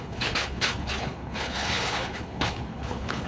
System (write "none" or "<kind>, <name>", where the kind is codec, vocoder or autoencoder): codec, HILCodec